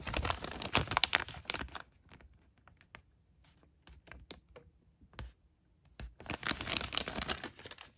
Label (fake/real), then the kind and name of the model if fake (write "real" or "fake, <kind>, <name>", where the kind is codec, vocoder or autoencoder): real